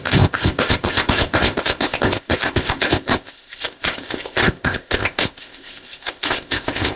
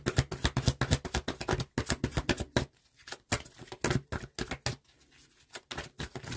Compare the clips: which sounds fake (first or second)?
first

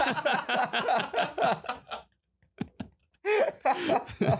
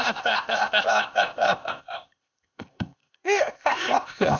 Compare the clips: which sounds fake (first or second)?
second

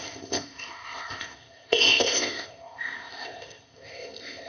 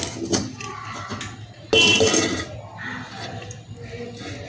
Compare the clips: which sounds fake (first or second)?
first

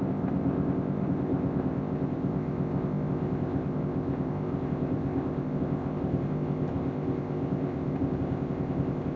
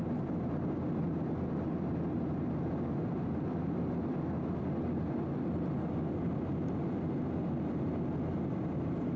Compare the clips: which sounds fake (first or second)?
first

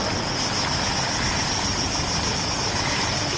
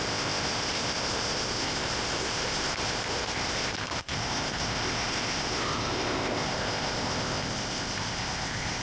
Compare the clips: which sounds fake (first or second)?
second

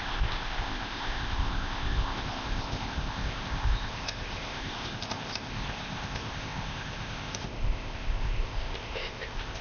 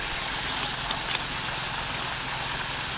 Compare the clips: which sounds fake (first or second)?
first